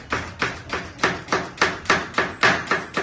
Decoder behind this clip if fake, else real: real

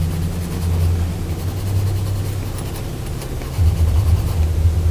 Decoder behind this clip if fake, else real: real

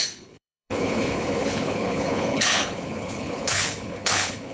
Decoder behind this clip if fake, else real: fake, codec, HILCodec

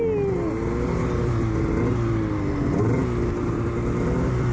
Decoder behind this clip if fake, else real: real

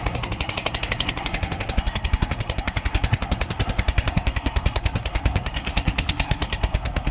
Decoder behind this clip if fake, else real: fake, codec, SNAC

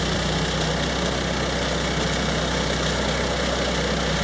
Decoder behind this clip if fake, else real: real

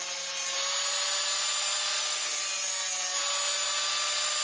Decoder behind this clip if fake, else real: real